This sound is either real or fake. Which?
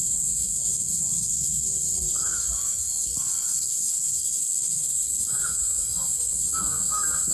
fake